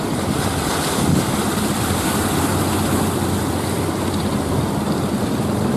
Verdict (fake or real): real